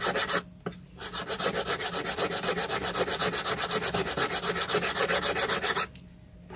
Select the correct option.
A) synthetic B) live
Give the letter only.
B